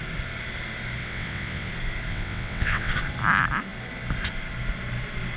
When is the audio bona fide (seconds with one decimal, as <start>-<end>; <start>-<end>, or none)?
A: 0.0-1.0; 1.7-2.1; 2.9-5.4